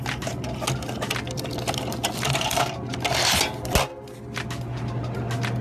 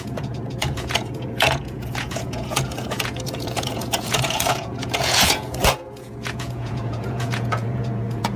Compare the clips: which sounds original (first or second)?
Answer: first